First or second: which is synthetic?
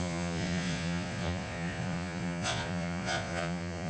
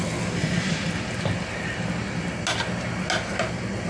first